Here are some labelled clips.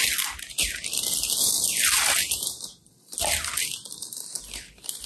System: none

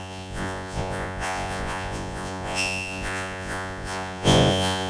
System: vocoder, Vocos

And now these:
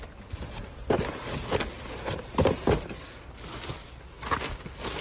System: none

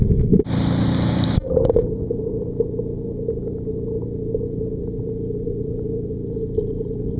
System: none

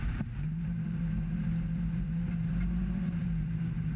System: vocoder, BigVGAN v2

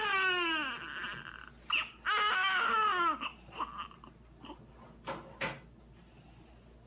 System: none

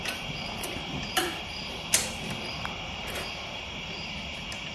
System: vocoder, BigVGAN v2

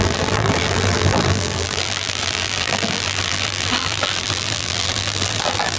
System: vocoder, BigVGAN v2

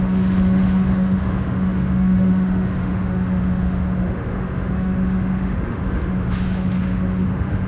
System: autoencoder, DAC-VAE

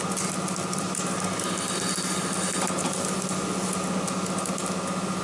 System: none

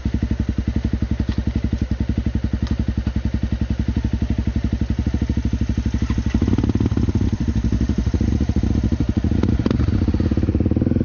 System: none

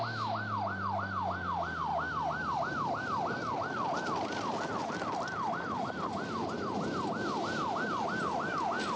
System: none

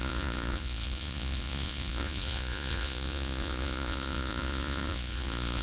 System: vocoder, Vocos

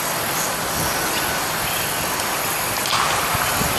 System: none